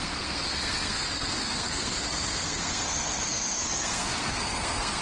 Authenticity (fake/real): fake